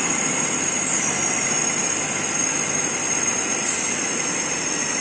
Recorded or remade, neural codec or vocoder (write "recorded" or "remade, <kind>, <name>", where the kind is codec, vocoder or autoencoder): recorded